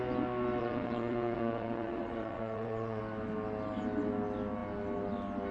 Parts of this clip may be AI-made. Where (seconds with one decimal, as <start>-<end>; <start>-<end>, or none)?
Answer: 0.6-3.0

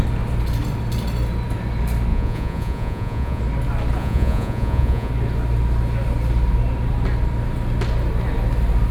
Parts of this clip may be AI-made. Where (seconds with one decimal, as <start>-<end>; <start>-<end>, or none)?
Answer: 2.1-3.4; 4.0-5.1

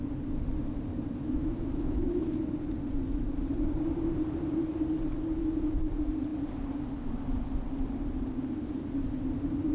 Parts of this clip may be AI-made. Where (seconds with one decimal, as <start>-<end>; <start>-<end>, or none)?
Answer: 1.2-2.4

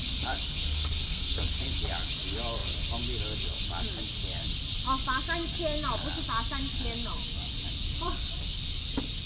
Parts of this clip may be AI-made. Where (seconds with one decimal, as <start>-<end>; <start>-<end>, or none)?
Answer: 0.6-1.4

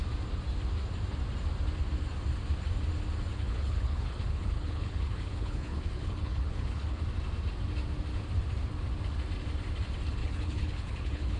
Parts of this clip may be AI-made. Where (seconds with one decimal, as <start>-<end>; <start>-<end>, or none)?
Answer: 3.3-7.0; 10.2-11.4

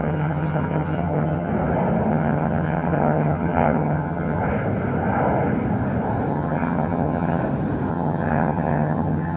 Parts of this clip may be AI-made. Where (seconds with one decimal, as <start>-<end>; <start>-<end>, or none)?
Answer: 0.0-1.5; 2.1-4.4; 6.3-7.4; 7.9-9.4